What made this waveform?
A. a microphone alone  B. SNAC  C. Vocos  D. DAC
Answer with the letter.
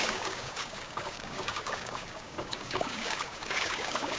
D